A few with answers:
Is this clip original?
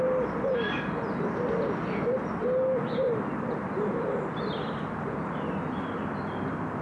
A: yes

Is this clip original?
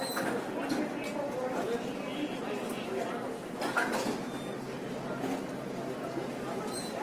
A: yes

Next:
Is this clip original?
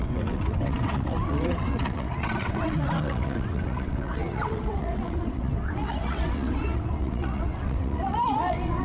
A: no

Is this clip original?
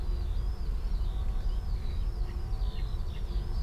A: yes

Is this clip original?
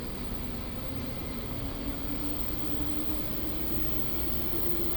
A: yes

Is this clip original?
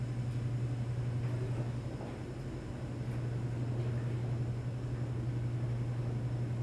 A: yes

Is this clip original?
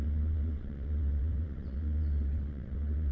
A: no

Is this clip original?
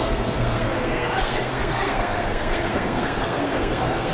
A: no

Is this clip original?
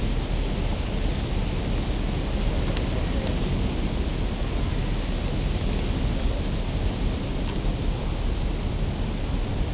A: yes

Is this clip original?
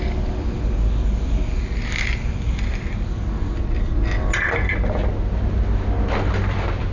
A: yes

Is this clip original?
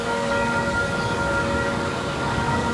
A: no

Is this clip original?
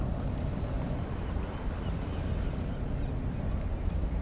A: yes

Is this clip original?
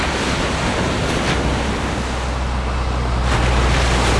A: yes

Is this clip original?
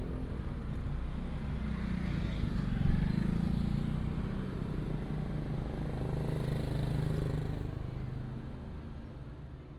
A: yes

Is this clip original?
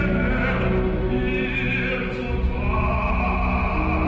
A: yes